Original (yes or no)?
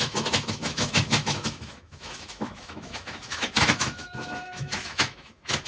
no